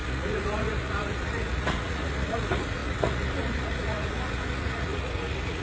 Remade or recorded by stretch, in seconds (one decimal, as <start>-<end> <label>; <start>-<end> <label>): 0.0-5.6 remade